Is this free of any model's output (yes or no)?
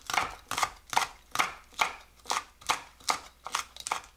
yes